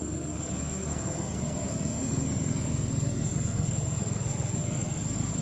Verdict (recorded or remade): remade